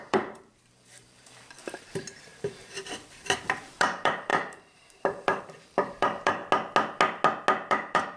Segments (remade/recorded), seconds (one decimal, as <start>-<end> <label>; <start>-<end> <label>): 0.0-6.4 remade; 6.4-7.7 recorded; 7.7-8.2 remade